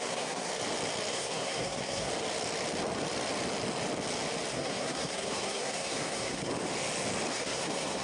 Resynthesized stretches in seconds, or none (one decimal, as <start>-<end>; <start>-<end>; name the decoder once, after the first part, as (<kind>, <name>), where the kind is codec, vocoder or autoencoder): 0.0-0.5 (codec, SNAC); 1.1-2.1; 4.5-6.5; 7.3-8.0